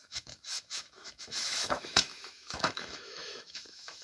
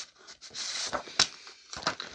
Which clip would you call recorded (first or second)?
second